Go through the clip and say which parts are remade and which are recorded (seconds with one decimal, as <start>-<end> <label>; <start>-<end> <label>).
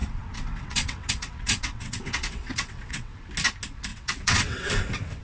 0.0-3.1 remade; 3.1-3.9 recorded; 3.9-4.7 remade; 4.7-5.2 recorded